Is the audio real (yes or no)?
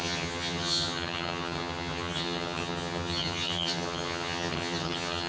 no